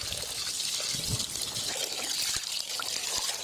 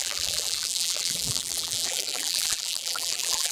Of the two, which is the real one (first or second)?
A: first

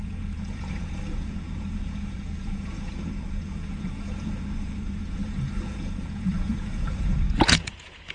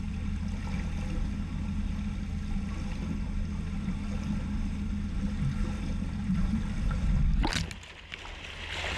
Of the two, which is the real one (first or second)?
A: second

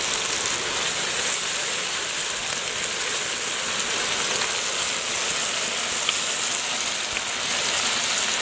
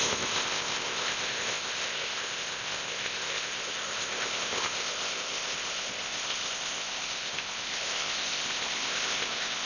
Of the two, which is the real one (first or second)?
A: first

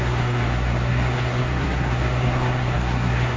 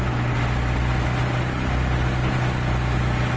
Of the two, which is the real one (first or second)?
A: second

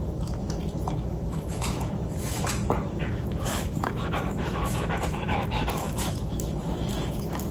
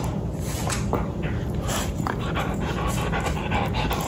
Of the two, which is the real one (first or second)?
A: second